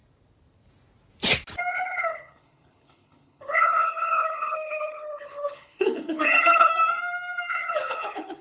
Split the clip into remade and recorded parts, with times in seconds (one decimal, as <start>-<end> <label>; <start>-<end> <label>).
0.0-1.7 recorded; 1.7-6.7 remade; 6.7-7.5 recorded; 7.5-8.4 remade